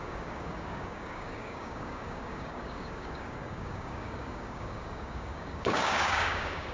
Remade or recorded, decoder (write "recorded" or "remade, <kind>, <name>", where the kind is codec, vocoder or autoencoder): remade, codec, DAC